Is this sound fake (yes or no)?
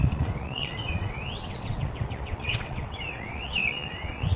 yes